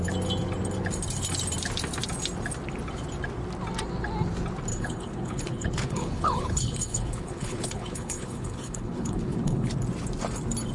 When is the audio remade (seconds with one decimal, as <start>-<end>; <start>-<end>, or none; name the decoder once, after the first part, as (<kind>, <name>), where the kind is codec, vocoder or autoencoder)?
4.7-9.7 (codec, HILCodec)